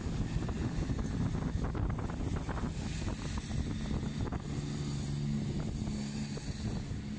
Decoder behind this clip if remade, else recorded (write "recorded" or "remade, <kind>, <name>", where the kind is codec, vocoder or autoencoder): recorded